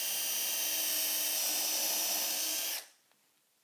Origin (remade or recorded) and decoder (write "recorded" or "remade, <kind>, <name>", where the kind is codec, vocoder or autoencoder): recorded